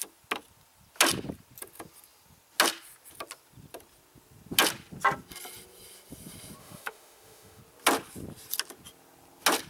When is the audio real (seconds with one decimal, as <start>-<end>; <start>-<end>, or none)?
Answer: 0.0-6.6; 7.6-9.7